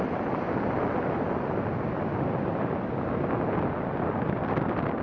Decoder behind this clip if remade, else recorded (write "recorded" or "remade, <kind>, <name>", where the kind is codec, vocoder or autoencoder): recorded